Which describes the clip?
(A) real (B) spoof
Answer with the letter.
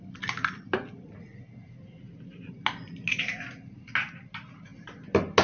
A